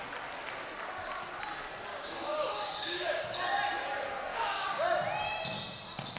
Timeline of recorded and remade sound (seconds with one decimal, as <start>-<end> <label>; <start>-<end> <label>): 0.0-1.9 recorded; 1.9-3.2 remade; 3.2-4.3 recorded; 4.3-5.0 remade; 5.0-6.2 recorded

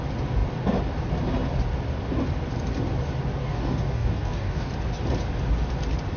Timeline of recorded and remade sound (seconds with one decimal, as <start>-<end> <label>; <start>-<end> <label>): 0.0-3.4 recorded; 3.4-4.7 remade; 4.7-6.2 recorded

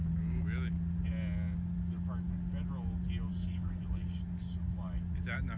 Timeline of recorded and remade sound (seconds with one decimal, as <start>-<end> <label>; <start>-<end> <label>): 0.0-3.3 recorded; 3.3-3.8 remade; 3.8-5.6 recorded

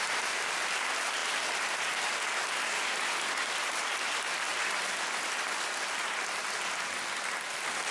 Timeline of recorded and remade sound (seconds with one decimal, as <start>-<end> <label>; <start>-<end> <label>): 0.0-7.9 recorded

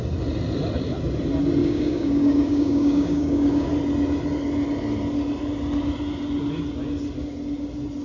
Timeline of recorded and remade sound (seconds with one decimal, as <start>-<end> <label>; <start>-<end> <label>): 0.0-1.6 recorded; 1.6-3.7 remade; 3.7-8.0 recorded

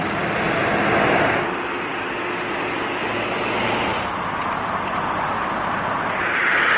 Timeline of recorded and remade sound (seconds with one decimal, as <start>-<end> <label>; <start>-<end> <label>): 0.0-6.8 recorded